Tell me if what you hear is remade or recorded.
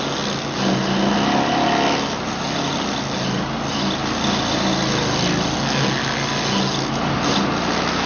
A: recorded